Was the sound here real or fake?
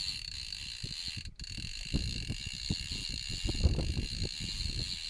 real